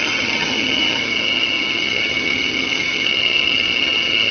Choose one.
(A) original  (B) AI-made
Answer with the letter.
B